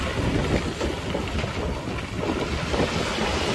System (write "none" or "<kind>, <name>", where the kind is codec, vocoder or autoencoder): none